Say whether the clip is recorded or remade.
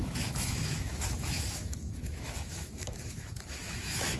remade